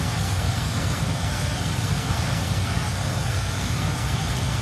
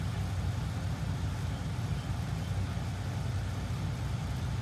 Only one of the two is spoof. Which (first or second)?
first